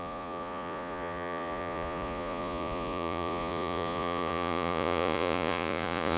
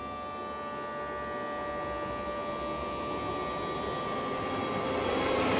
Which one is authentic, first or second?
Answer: second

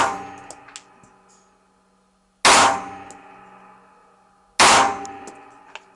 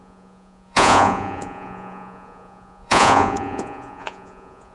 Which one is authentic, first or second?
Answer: first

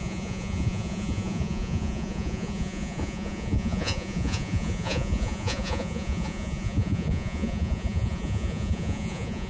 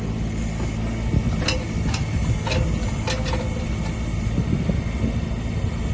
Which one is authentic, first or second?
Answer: second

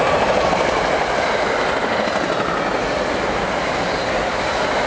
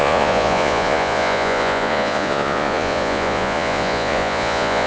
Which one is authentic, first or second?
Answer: first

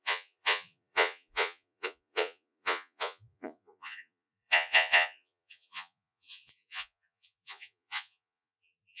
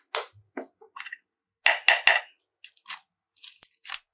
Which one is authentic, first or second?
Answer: second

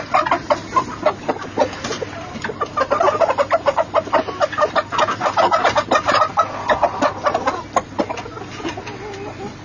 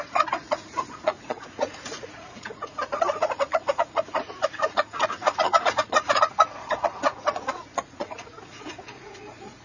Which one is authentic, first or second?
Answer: first